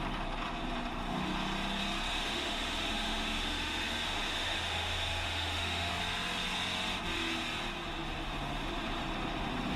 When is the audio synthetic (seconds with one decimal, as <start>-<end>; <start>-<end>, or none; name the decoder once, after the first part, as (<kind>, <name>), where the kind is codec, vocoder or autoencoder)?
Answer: 2.1-5.9 (autoencoder, DAC-VAE)